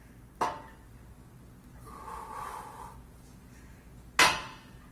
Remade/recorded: recorded